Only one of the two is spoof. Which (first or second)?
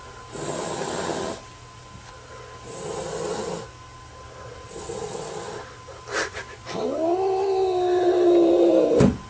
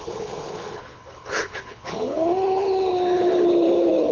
second